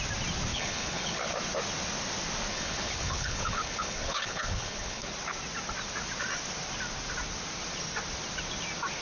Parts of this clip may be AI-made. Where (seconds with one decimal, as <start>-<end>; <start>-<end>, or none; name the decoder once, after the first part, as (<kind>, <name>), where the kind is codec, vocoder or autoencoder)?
0.5-1.3 (codec, HILCodec); 2.5-5.1